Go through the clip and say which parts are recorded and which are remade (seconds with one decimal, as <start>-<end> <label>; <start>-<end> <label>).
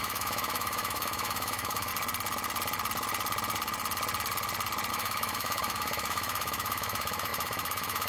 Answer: 0.0-1.9 remade; 1.9-4.9 recorded; 4.9-8.1 remade